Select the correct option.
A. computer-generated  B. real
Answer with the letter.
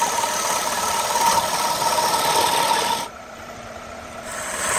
B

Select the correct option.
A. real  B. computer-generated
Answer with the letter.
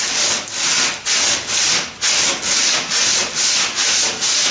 A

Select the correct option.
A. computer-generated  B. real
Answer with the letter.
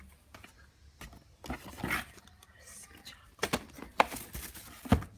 B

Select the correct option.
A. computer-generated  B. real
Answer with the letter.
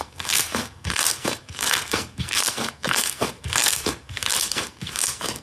A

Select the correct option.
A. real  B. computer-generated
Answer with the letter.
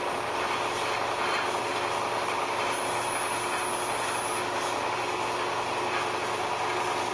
A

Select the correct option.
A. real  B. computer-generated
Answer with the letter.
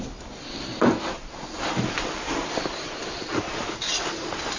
A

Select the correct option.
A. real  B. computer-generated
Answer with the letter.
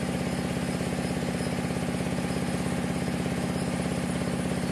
A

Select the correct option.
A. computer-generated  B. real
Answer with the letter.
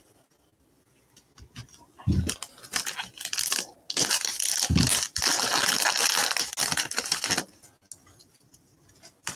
B